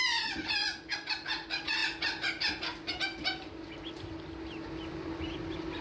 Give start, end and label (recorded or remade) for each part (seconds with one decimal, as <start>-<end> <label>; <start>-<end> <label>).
0.0-5.8 recorded

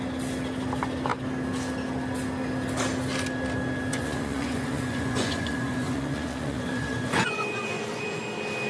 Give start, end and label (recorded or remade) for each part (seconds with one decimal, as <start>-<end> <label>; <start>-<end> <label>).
0.0-3.9 recorded; 3.9-8.2 remade; 8.2-8.7 recorded

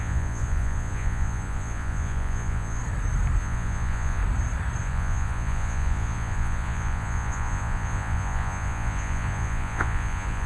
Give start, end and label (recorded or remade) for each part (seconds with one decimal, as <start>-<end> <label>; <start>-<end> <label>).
0.0-2.8 remade; 2.8-3.4 recorded; 3.4-4.2 remade; 4.2-4.8 recorded; 4.8-10.5 remade

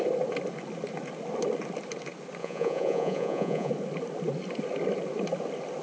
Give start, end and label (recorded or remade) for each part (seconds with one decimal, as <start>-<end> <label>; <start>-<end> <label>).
0.0-2.4 recorded; 2.4-3.7 remade; 3.7-5.8 recorded